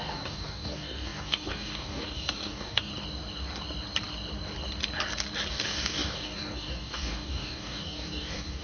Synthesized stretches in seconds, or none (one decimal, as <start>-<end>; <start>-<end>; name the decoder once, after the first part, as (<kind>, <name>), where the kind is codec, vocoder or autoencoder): 0.0-2.9 (codec, DAC); 5.5-8.6